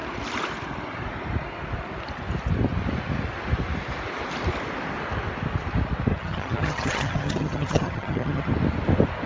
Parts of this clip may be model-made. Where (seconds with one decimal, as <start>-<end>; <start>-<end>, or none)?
6.1-8.5